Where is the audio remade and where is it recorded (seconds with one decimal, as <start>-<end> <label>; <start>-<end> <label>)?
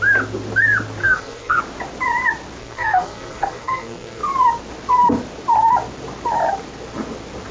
0.0-1.0 recorded; 1.0-1.6 remade; 1.6-2.6 recorded; 2.6-4.2 remade; 4.2-7.5 recorded